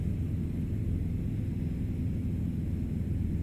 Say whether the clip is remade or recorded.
recorded